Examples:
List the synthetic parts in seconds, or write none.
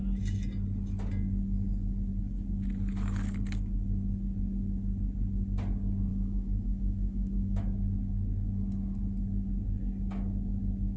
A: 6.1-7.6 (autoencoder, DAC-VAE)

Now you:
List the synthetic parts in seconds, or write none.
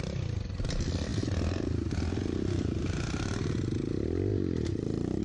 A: none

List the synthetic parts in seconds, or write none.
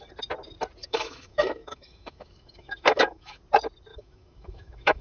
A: 0.8-3.4 (autoencoder, DAC-VAE); 3.9-5.0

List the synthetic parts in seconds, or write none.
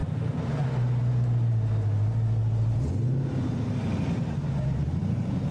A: none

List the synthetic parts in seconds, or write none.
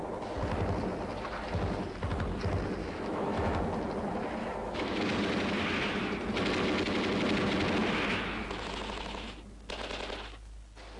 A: 2.8-3.6 (autoencoder, DAC-VAE); 4.4-5.0